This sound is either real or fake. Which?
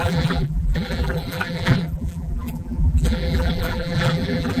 fake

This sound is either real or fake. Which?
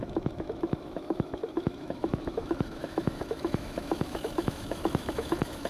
fake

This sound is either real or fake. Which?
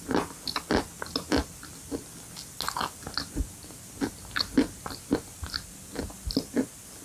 real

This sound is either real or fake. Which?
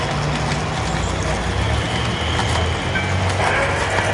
real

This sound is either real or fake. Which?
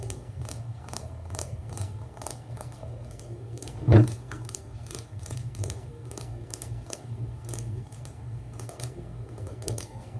fake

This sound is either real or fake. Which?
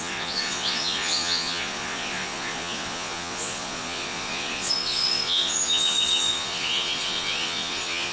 fake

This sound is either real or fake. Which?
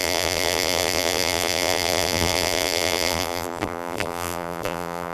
fake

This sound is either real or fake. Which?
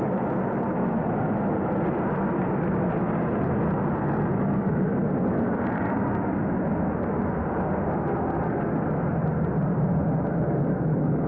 real